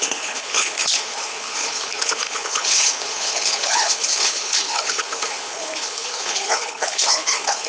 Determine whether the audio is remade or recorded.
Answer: remade